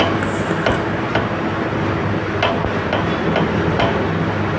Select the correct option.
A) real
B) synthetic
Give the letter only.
A